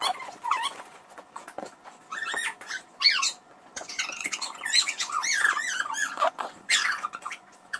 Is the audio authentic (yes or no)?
no